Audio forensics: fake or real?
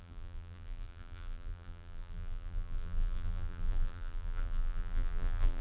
fake